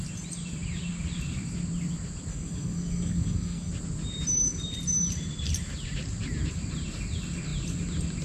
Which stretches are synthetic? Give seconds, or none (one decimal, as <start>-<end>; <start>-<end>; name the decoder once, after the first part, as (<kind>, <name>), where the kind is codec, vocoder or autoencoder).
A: 2.3-3.7 (codec, SNAC)